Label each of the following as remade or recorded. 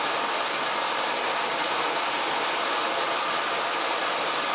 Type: remade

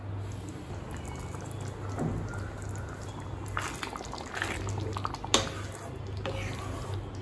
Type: recorded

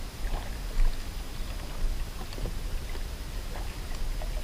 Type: recorded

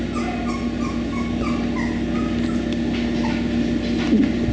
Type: recorded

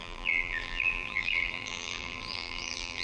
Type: remade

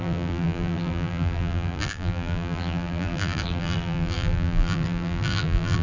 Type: remade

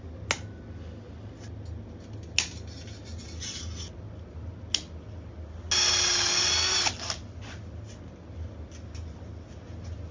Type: recorded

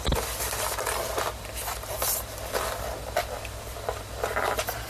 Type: remade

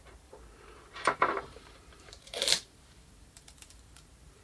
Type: remade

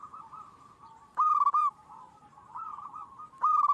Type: remade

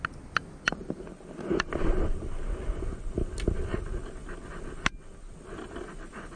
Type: recorded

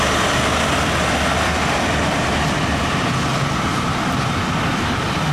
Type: remade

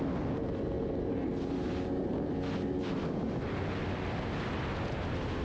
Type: recorded